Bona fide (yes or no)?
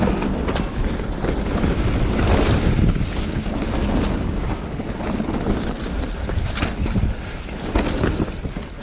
yes